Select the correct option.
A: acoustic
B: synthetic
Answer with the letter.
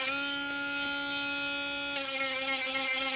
A